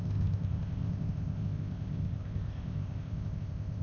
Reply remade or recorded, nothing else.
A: remade